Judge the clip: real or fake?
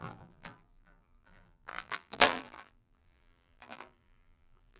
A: fake